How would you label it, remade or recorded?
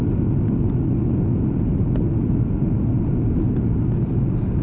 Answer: recorded